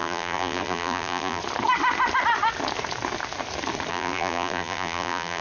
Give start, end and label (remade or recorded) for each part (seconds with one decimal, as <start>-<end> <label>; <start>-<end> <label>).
0.0-1.4 remade; 1.4-3.9 recorded; 3.9-5.4 remade